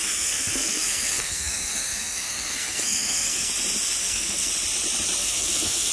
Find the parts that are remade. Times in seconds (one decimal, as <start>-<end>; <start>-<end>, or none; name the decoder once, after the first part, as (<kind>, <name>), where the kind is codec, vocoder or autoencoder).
0.0-3.5 (codec, SNAC); 4.0-4.5; 5.2-5.9